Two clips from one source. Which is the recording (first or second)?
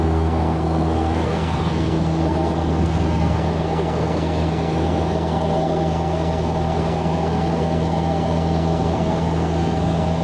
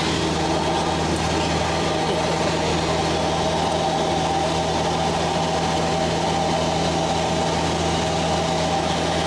second